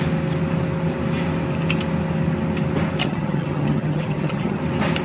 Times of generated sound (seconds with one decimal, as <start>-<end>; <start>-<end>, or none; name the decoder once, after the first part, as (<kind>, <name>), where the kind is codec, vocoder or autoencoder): 3.0-4.6 (vocoder, HiFi-GAN)